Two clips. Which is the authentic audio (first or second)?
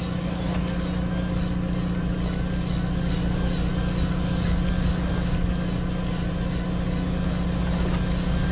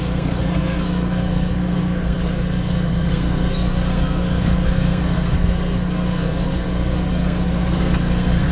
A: first